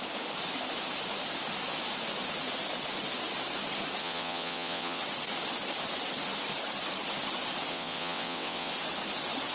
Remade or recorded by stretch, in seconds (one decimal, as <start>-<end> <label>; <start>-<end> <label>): 0.0-4.0 recorded; 4.0-5.0 remade; 5.0-7.7 recorded; 7.7-8.7 remade; 8.7-9.5 recorded